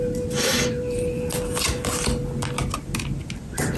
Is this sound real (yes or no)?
yes